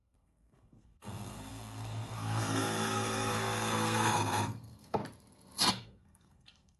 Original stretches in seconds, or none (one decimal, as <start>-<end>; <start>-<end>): 5.0-5.7